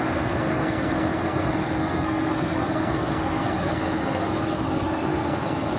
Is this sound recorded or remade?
remade